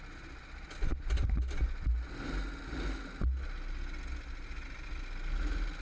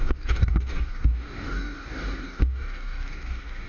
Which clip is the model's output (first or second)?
second